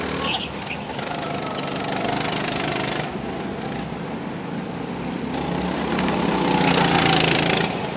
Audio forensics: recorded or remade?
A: recorded